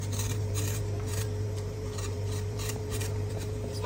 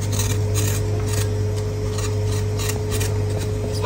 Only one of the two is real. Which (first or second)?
second